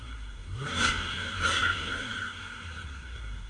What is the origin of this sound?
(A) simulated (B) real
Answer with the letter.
A